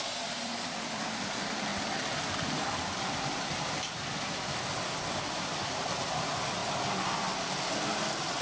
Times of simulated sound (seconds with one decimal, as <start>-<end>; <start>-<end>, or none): 0.0-1.7; 2.3-6.6; 7.7-8.4